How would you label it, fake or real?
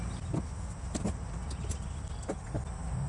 real